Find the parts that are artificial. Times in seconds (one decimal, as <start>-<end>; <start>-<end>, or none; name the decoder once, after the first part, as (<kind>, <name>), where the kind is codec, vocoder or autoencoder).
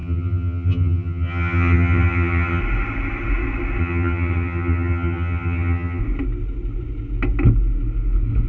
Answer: 0.0-2.6 (vocoder, HiFi-GAN); 3.8-6.0